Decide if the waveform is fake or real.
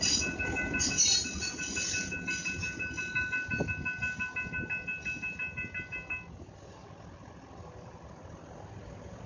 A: real